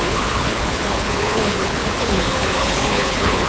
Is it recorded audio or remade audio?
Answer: remade